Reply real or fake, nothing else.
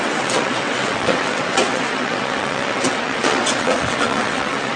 fake